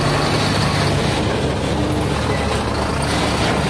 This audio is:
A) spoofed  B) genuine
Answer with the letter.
B